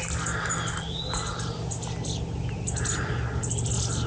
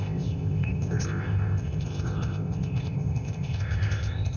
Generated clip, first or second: second